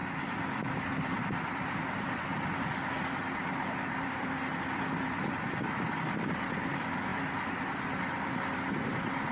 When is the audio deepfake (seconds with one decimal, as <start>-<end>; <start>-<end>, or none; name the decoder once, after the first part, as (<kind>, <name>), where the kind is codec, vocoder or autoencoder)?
none